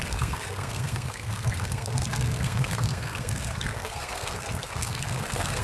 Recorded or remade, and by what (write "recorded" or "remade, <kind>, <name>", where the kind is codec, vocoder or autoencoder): remade, codec, SNAC